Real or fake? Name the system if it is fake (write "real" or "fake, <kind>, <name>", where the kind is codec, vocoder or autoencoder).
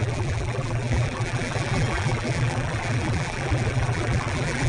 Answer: fake, vocoder, BigVGAN v2